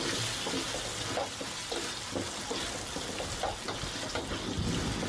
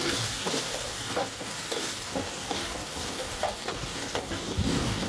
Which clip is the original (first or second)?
first